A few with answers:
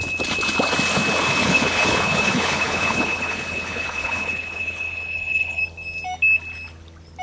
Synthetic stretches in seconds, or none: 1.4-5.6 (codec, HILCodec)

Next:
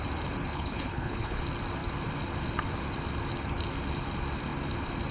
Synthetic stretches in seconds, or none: 0.5-1.4 (codec, HILCodec)

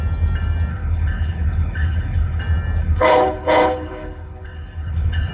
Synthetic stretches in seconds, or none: 0.7-2.4 (codec, HILCodec); 2.8-5.3

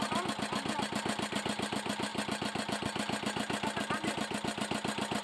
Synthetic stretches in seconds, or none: none

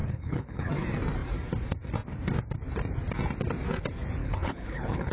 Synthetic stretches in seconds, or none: 0.0-0.7 (codec, HILCodec); 4.2-5.1